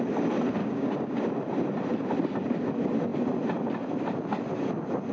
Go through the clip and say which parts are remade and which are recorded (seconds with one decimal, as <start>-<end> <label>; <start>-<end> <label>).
0.0-0.6 recorded; 0.6-1.2 remade; 1.2-5.1 recorded